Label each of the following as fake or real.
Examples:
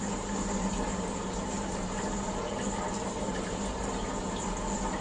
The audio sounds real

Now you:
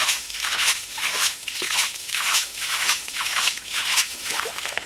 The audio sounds fake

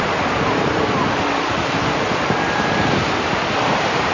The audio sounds fake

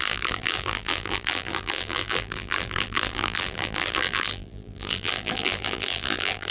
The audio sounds fake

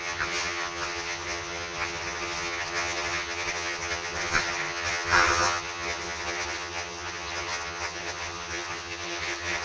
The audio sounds fake